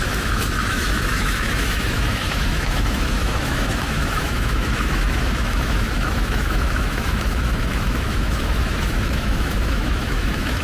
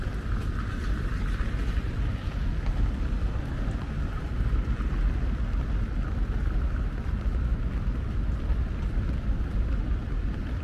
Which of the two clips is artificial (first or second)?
first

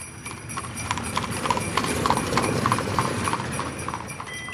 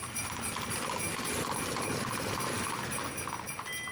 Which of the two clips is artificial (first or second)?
first